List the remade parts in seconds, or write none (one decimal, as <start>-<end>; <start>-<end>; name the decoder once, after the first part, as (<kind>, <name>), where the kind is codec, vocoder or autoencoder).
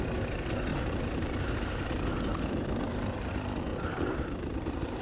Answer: 0.7-1.8 (vocoder, BigVGAN v2); 2.3-3.3; 3.7-5.0